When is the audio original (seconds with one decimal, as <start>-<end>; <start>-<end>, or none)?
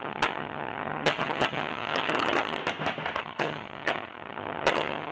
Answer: 2.6-3.2